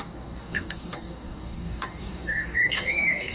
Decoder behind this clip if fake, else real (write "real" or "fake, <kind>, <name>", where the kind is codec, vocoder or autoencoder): fake, codec, DAC